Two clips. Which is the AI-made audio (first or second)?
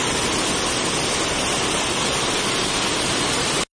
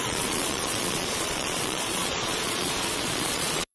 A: second